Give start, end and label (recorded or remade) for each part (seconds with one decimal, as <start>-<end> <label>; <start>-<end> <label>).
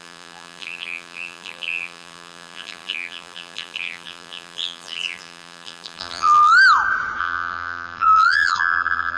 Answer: 0.0-6.5 remade; 6.5-7.2 recorded; 7.2-9.2 remade